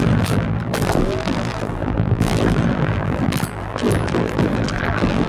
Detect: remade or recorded remade